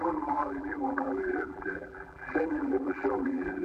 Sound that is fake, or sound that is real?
fake